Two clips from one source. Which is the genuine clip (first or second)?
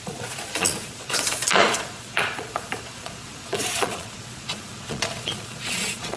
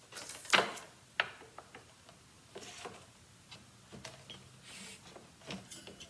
second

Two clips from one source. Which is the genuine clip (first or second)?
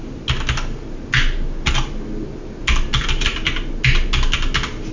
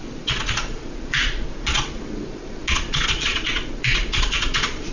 first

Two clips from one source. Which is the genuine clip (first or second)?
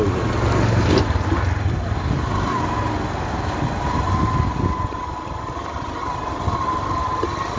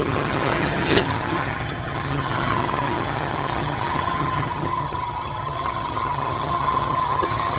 first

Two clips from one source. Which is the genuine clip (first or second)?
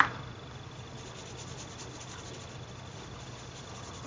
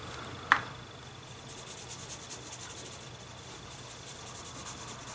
second